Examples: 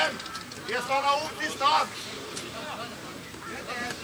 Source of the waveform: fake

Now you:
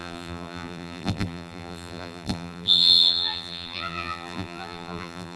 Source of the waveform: fake